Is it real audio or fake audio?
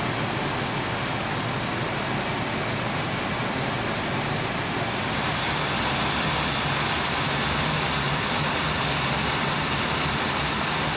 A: real